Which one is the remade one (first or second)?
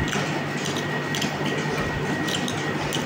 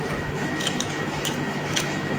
second